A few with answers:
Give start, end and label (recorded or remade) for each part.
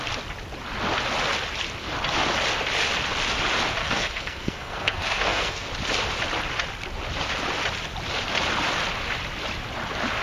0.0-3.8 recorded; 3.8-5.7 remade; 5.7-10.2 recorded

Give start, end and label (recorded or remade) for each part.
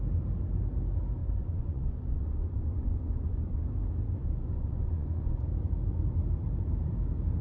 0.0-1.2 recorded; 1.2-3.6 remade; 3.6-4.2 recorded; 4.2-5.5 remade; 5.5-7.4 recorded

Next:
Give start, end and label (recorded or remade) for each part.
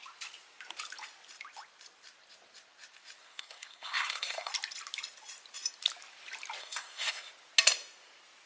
0.0-3.2 recorded; 3.2-4.5 remade; 4.5-6.6 recorded; 6.6-7.3 remade; 7.3-8.5 recorded